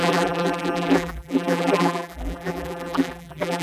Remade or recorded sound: remade